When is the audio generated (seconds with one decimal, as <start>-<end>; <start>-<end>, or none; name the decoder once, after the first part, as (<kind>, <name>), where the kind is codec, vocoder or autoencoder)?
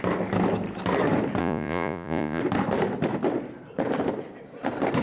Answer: 1.4-2.4 (vocoder, Vocos)